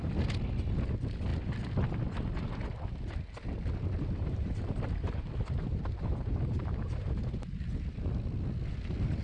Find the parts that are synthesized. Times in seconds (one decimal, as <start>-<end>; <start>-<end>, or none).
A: 4.2-8.1